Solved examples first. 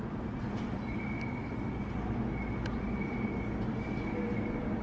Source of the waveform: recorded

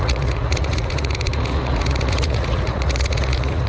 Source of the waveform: remade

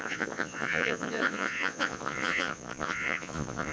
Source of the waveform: remade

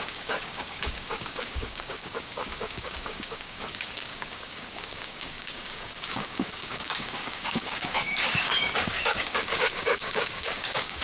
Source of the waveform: remade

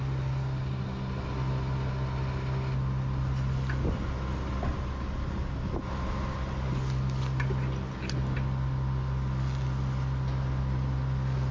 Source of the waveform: recorded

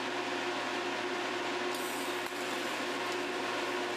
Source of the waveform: recorded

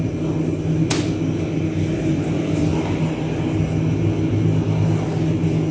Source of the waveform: recorded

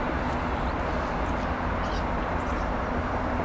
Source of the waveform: recorded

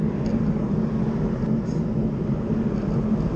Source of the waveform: recorded